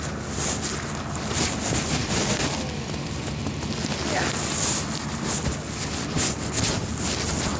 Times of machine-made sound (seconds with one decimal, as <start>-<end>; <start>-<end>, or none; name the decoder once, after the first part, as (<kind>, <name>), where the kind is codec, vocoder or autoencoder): none